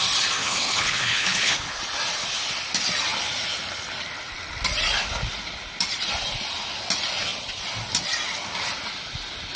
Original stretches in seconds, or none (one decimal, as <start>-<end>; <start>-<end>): 0.0-0.4; 1.8-9.6